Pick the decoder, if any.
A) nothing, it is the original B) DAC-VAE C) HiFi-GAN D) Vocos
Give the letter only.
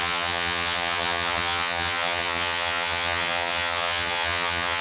C